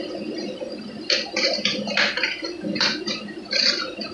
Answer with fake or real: real